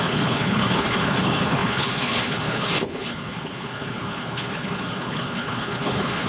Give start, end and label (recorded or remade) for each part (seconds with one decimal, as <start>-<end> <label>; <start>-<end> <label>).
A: 0.0-6.3 remade